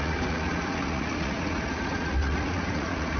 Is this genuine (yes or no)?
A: no